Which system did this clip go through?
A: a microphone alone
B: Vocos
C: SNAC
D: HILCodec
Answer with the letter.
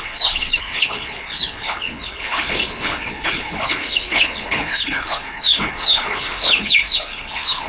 D